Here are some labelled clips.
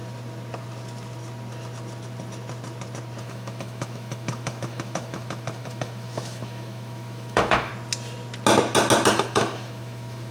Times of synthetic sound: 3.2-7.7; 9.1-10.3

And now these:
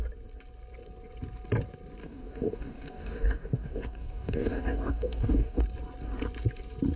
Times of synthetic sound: 2.0-5.6

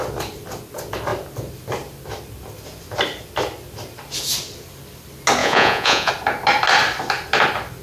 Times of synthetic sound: 5.4-6.1

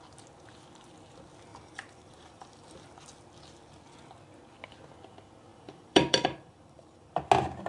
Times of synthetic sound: 1.5-2.9; 5.5-7.2

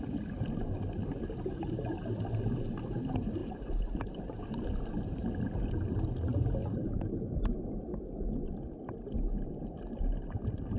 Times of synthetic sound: 3.4-4.1; 6.6-7.6

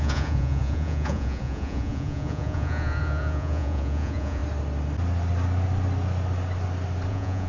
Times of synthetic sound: 0.0-4.4; 7.1-7.5

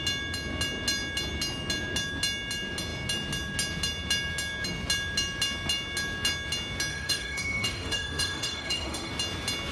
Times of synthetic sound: 6.9-9.1

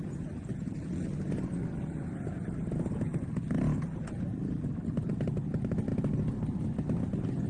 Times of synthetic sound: none